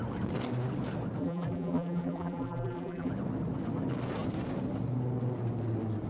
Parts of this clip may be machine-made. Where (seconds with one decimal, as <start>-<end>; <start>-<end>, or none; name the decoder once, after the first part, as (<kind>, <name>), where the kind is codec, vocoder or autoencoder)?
1.2-3.1 (vocoder, BigVGAN v2)